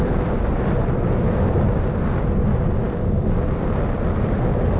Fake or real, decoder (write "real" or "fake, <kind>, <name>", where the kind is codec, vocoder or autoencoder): real